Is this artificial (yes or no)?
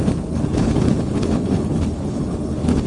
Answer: yes